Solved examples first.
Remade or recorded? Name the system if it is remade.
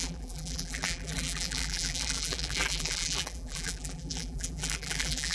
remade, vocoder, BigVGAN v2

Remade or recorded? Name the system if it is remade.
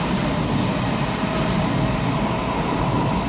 recorded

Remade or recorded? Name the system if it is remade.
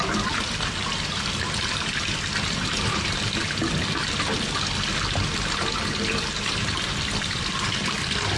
recorded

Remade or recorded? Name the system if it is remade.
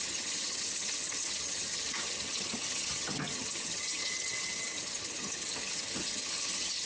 remade, vocoder, HiFi-GAN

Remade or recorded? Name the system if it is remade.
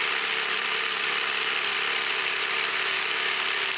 remade, vocoder, BigVGAN v2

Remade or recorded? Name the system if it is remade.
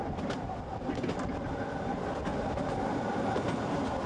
recorded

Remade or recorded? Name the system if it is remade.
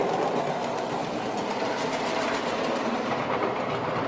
recorded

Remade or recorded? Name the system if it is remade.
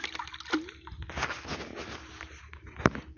recorded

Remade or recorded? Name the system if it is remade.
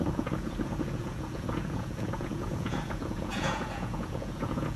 remade, vocoder, Vocos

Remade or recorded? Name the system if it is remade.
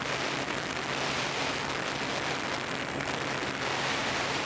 recorded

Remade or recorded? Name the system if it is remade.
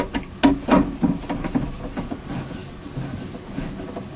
recorded